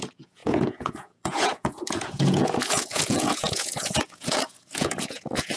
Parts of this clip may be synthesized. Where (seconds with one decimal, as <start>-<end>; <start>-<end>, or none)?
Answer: 0.0-5.6

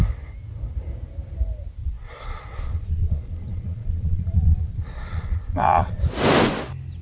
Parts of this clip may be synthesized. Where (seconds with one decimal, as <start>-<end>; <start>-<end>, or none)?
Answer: 1.8-6.0

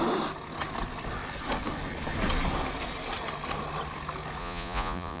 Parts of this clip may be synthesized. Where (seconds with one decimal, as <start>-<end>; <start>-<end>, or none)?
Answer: 4.4-5.2

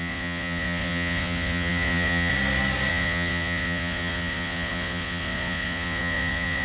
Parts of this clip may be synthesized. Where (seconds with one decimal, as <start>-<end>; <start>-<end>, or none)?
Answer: 0.0-2.3; 2.9-6.6

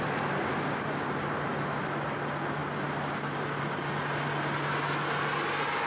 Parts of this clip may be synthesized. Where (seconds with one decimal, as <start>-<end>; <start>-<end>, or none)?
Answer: none